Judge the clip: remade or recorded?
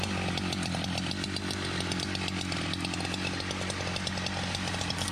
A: recorded